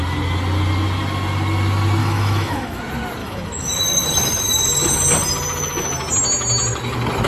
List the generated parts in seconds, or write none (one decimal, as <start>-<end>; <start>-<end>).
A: 2.0-2.8; 3.2-3.7